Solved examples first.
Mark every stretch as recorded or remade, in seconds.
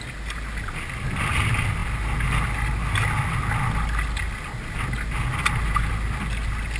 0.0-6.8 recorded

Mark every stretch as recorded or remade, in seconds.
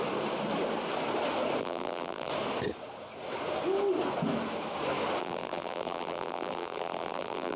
0.0-1.6 recorded; 1.6-2.3 remade; 2.3-5.2 recorded; 5.2-7.6 remade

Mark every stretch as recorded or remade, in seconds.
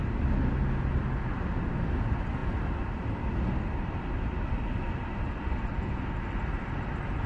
0.0-7.3 recorded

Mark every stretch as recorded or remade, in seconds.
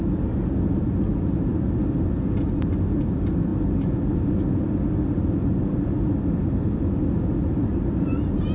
0.0-5.4 recorded; 5.4-6.4 remade; 6.4-8.5 recorded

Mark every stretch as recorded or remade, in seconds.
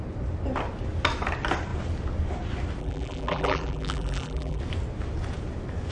0.0-2.8 recorded; 2.8-4.6 remade; 4.6-5.9 recorded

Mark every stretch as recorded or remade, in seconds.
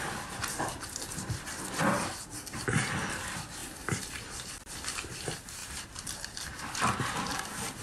0.0-3.6 remade; 3.6-4.5 recorded; 4.5-7.8 remade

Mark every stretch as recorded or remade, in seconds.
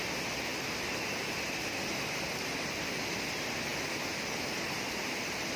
0.0-5.6 recorded